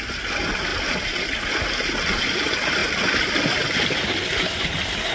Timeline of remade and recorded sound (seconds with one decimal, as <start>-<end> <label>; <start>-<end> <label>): 0.0-0.7 recorded; 0.7-1.6 remade; 1.6-2.8 recorded; 2.8-4.2 remade; 4.2-5.1 recorded

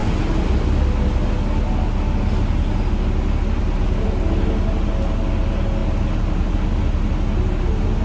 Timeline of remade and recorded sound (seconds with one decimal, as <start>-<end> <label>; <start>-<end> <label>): 0.0-8.0 recorded

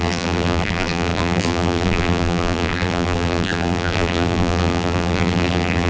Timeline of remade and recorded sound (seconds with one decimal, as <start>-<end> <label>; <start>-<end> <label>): 0.0-5.9 remade